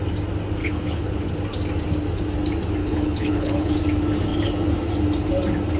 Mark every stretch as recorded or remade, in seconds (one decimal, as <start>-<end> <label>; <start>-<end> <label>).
0.0-0.6 recorded; 0.6-1.3 remade; 1.3-2.8 recorded; 2.8-3.7 remade; 3.7-5.8 recorded